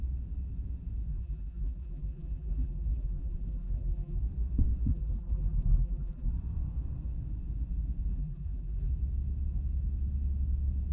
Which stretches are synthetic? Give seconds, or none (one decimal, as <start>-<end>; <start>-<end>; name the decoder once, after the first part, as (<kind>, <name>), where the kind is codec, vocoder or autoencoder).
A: 1.1-4.2 (vocoder, BigVGAN v2); 4.9-6.3; 8.1-8.9